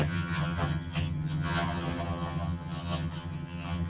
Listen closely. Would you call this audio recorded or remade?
remade